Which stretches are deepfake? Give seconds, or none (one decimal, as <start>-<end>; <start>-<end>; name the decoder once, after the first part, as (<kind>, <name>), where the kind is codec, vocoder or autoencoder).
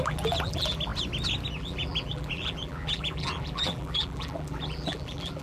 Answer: 0.0-0.9 (vocoder, BigVGAN v2); 1.5-5.4